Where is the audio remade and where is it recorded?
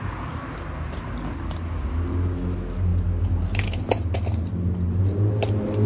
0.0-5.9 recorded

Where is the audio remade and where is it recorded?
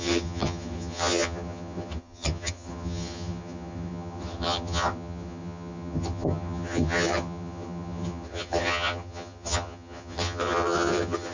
0.0-11.3 remade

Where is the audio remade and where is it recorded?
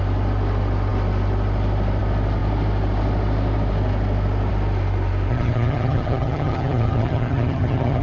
0.0-5.3 recorded; 5.3-8.0 remade